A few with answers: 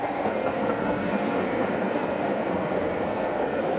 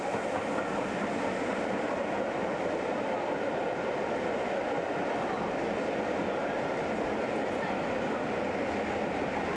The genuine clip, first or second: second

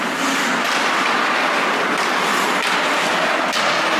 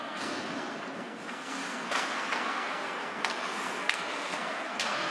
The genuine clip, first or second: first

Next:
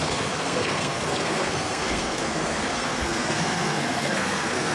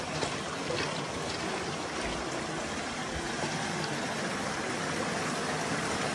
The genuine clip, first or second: second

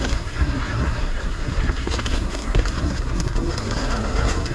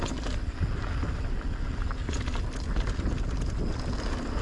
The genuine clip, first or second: second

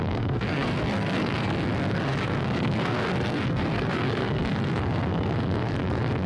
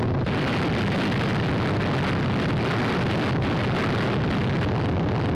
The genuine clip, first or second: second